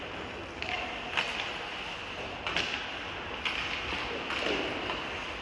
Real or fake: real